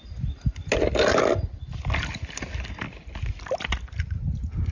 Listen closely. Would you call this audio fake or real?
real